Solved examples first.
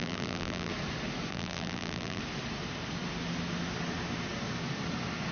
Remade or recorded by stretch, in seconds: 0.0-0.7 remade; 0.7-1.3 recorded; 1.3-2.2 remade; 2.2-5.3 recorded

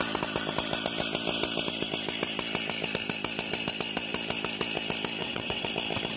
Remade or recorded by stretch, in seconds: 0.0-5.2 recorded; 5.2-5.7 remade; 5.7-6.2 recorded

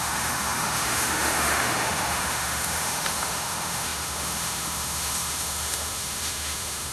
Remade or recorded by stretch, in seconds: 0.0-6.9 remade